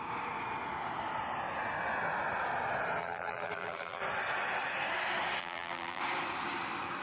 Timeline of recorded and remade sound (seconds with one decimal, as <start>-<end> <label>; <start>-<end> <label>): 0.0-3.0 recorded; 3.0-4.0 remade; 4.0-5.4 recorded; 5.4-6.0 remade; 6.0-7.0 recorded